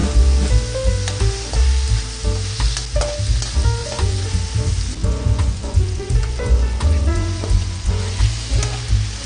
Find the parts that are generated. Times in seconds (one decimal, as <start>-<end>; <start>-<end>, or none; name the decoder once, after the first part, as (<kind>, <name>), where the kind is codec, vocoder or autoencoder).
3.8-4.4 (vocoder, Vocos); 5.0-8.2